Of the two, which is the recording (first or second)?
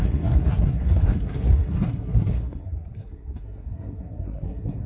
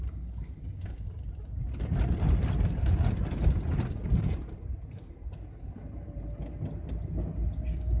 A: second